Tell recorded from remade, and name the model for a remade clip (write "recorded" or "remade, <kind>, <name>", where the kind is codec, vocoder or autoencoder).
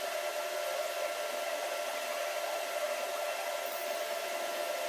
recorded